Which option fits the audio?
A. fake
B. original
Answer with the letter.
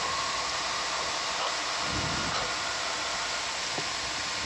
B